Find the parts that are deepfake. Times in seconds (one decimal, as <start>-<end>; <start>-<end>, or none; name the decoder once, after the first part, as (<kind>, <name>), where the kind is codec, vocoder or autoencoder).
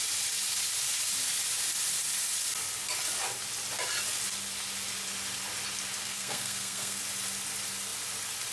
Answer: 6.0-7.0 (codec, SNAC)